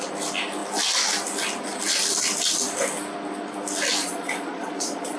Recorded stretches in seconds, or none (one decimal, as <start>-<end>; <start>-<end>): 0.0-4.0

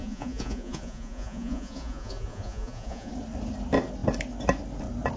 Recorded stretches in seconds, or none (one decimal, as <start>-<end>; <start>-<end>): 3.1-5.2

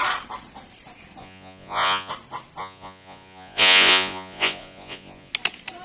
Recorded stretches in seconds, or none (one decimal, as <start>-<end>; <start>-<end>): 0.0-1.2; 2.1-2.6; 5.3-5.8